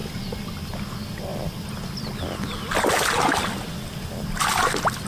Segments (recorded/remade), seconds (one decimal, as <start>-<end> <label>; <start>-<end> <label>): 0.0-5.1 recorded